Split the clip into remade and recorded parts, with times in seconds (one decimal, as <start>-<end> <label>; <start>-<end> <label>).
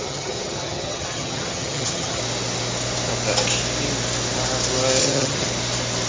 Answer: 0.0-2.2 remade; 2.2-5.0 recorded; 5.0-5.5 remade; 5.5-6.1 recorded